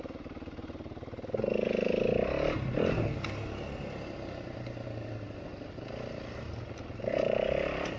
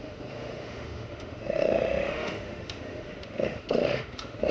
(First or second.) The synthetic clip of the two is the second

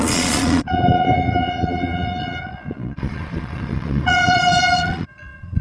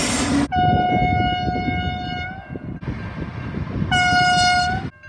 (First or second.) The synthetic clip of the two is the first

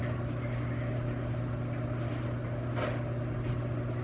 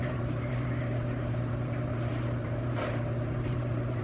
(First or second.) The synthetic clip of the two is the second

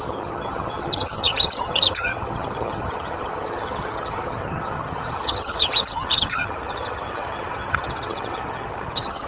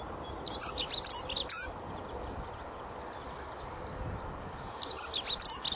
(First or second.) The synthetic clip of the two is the first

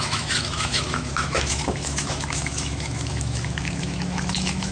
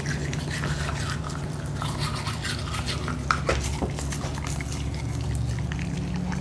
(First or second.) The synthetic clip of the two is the first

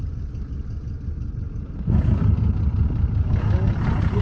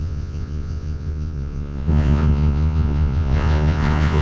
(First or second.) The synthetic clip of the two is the second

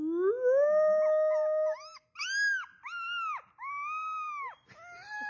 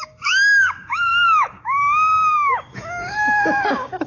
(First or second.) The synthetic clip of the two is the second